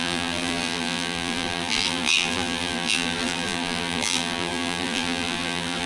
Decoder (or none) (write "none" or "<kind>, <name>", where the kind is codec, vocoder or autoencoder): vocoder, BigVGAN v2